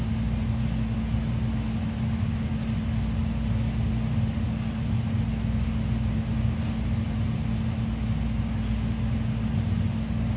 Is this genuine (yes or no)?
yes